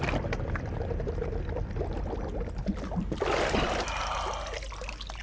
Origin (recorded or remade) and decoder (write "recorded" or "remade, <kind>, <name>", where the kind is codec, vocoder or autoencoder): recorded